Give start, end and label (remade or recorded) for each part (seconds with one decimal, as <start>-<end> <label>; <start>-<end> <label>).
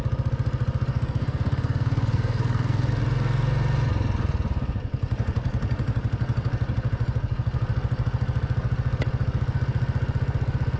0.0-0.9 recorded; 0.9-2.9 remade; 2.9-10.8 recorded